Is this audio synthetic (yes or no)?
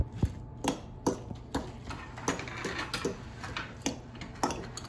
no